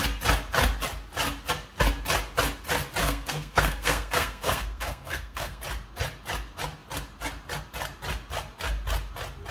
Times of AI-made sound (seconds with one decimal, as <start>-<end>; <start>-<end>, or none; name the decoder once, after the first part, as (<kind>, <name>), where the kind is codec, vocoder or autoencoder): 3.0-5.6 (codec, SNAC)